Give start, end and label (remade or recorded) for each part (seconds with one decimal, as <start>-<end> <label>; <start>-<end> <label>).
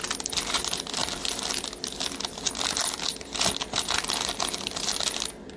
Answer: 0.0-5.6 recorded